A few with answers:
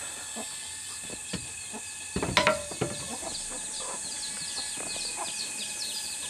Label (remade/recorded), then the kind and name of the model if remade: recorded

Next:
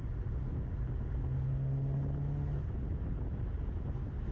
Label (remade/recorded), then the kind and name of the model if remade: recorded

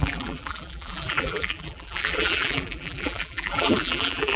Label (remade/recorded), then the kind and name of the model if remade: remade, vocoder, BigVGAN v2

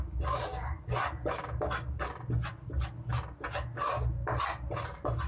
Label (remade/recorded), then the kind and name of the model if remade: recorded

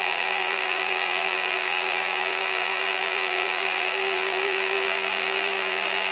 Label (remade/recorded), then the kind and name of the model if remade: remade, vocoder, BigVGAN v2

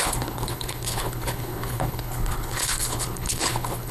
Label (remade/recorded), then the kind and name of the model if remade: remade, codec, HILCodec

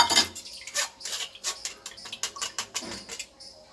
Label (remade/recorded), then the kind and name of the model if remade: recorded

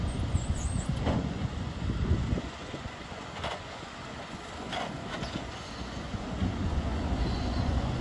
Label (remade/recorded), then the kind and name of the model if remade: remade, vocoder, Vocos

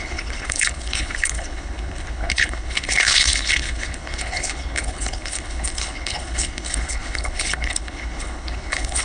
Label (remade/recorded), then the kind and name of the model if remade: remade, codec, HILCodec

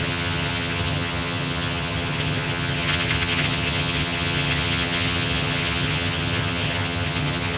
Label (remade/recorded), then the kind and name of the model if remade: remade, vocoder, HiFi-GAN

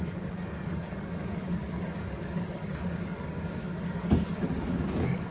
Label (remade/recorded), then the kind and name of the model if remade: remade, codec, DAC